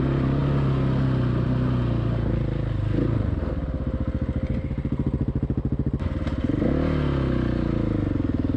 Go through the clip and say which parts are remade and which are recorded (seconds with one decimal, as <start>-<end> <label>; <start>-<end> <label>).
0.0-8.6 recorded